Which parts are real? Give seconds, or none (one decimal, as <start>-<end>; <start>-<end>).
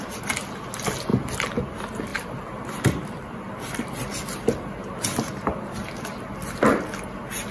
0.0-2.1; 6.6-7.5